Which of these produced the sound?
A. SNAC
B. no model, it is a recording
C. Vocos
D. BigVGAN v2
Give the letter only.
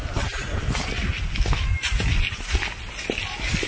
B